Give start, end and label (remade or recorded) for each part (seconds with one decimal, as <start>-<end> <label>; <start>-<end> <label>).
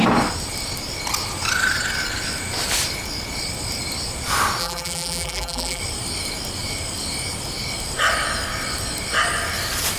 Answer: 0.0-4.6 recorded; 4.6-5.8 remade; 5.8-10.0 recorded